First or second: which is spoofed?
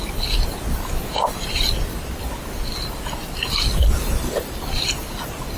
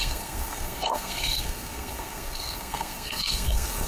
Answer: second